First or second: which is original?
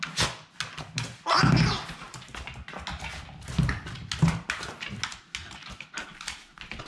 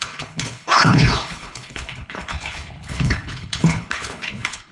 first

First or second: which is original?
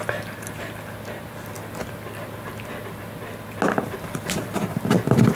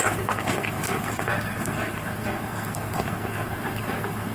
first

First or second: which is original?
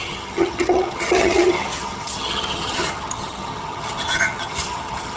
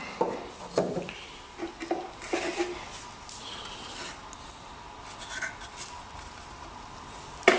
second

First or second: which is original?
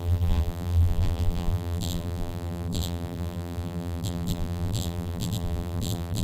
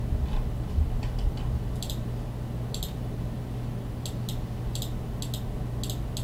second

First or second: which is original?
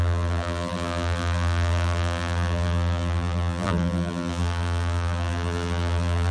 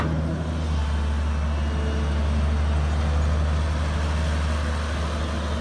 second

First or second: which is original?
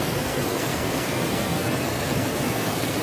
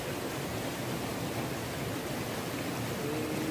second